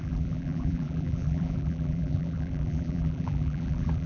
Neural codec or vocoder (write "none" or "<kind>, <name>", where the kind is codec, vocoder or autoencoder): vocoder, BigVGAN v2